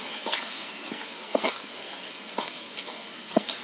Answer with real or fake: fake